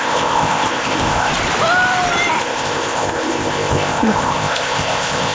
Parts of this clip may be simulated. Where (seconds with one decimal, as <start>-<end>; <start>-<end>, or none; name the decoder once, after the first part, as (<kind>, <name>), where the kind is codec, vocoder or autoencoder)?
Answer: 0.0-1.3 (codec, ZipCodec); 2.4-5.3